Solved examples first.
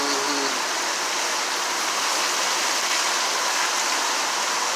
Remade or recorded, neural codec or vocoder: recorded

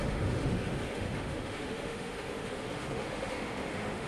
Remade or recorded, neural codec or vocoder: remade, autoencoder, DAC-VAE